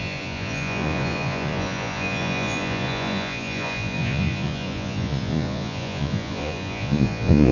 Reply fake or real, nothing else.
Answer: fake